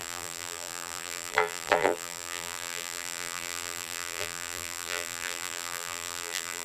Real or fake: fake